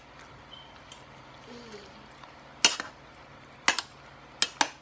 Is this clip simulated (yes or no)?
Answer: no